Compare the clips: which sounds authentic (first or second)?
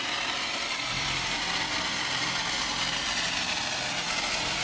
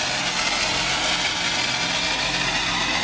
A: second